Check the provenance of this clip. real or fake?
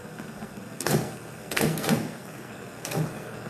fake